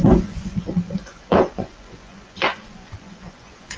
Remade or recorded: remade